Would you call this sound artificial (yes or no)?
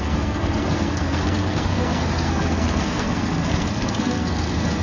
yes